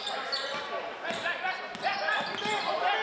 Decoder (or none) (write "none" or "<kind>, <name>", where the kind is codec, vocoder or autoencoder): none